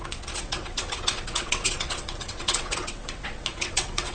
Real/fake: fake